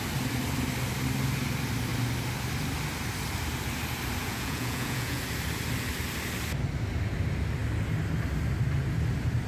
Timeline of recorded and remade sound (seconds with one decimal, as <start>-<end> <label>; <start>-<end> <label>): 0.0-4.2 recorded; 4.2-5.2 remade; 5.2-9.5 recorded